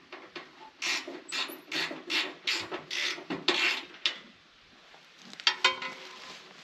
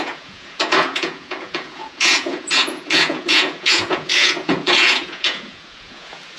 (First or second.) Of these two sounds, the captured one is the first